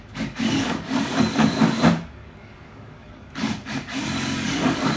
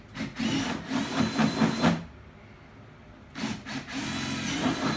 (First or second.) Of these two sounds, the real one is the second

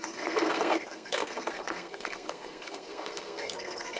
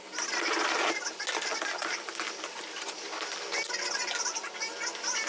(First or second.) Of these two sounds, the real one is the second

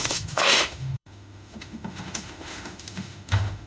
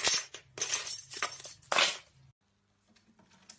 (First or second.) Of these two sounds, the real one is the second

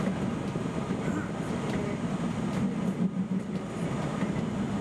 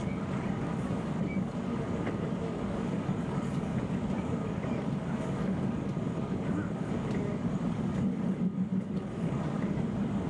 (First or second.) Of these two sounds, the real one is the first